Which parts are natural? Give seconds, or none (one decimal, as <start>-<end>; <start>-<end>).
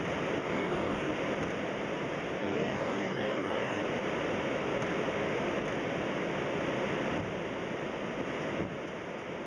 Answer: 0.0-0.4; 1.1-2.4; 3.8-9.5